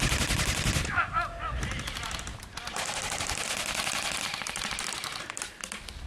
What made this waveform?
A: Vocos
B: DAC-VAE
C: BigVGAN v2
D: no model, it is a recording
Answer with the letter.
D